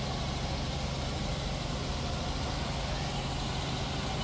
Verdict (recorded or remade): recorded